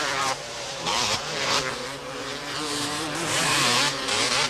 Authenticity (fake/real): fake